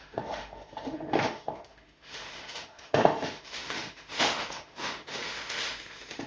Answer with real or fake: fake